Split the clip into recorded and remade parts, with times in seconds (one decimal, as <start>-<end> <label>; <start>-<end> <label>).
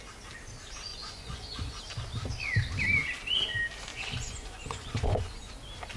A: 0.0-0.9 recorded; 0.9-1.8 remade; 1.8-3.9 recorded; 3.9-5.5 remade; 5.5-6.0 recorded